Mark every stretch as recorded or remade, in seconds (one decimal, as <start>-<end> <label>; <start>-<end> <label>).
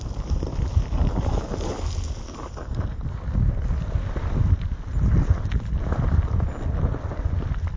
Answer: 0.0-7.8 recorded